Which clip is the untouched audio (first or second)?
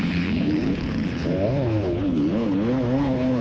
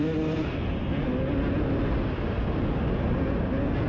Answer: second